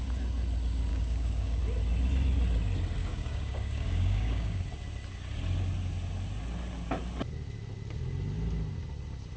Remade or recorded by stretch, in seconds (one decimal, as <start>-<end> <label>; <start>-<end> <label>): 0.0-0.9 recorded; 0.9-1.6 remade; 1.6-3.0 recorded; 3.0-4.6 remade; 4.6-9.4 recorded

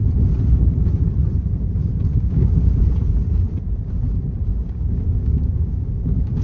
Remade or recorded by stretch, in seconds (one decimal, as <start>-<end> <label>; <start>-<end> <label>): 0.0-2.1 recorded; 2.1-2.8 remade; 2.8-4.5 recorded; 4.5-6.4 remade

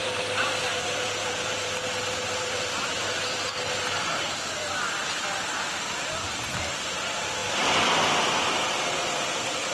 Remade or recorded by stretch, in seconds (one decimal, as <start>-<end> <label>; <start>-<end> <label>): 0.0-9.7 recorded

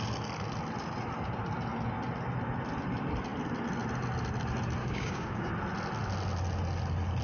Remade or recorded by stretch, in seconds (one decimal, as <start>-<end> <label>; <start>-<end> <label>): 0.0-4.8 recorded; 4.8-5.5 remade; 5.5-7.2 recorded

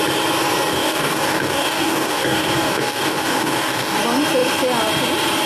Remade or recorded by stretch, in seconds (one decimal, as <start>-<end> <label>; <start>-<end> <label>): 0.0-0.7 recorded; 0.7-4.0 remade; 4.0-5.5 recorded

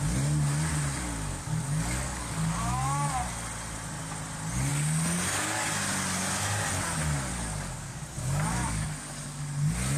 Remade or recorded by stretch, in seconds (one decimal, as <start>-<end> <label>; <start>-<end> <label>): 0.0-1.3 recorded; 1.3-3.1 remade; 3.1-7.3 recorded; 7.3-9.4 remade; 9.4-10.0 recorded

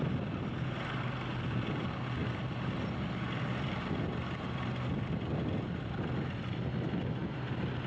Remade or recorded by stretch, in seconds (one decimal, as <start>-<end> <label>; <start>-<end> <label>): 0.0-7.9 recorded

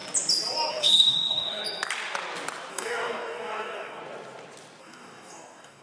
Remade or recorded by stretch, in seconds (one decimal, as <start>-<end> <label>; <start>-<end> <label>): 0.0-0.7 recorded; 0.7-1.6 remade; 1.6-2.7 recorded; 2.7-4.0 remade; 4.0-4.8 recorded; 4.8-5.8 remade